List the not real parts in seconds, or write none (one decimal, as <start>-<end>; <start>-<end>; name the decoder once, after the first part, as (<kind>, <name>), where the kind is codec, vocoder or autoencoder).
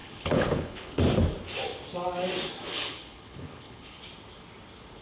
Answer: 0.0-1.0 (codec, HILCodec); 2.7-4.0